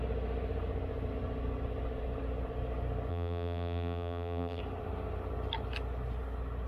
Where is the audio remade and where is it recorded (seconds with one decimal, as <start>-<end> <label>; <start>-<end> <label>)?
0.0-3.1 recorded; 3.1-4.6 remade; 4.6-6.7 recorded